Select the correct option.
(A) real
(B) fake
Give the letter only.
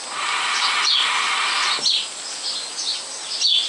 A